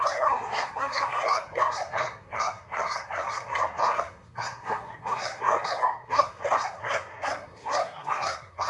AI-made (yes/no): yes